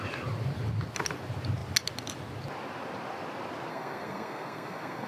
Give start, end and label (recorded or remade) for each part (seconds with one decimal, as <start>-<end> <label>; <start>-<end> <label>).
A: 0.0-3.7 recorded; 3.7-5.1 remade